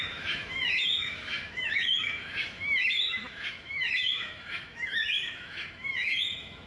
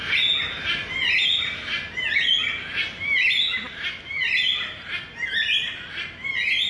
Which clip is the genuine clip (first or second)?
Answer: second